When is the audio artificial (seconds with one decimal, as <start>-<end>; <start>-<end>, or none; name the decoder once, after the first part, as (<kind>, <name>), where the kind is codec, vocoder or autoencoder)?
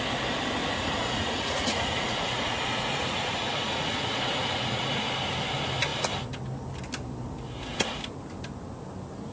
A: 0.6-5.1 (vocoder, Vocos)